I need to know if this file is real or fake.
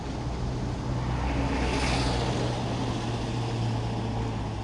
real